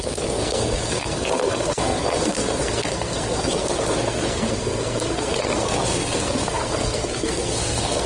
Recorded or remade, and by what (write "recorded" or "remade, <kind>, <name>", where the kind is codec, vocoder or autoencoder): remade, codec, SNAC